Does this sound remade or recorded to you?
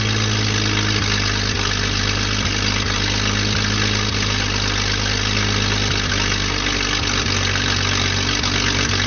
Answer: recorded